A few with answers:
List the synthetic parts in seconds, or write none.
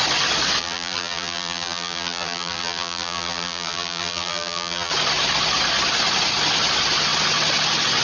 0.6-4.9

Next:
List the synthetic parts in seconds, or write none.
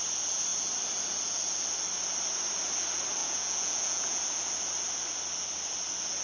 3.2-4.2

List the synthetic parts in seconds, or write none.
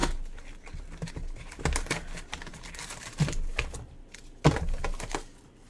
none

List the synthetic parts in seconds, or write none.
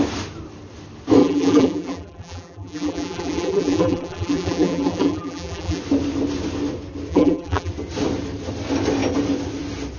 1.2-5.8; 7.1-7.7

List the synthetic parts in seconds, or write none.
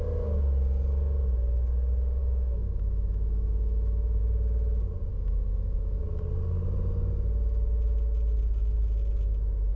2.2-4.2; 5.1-6.0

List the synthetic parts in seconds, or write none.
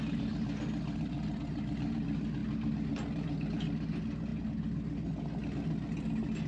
none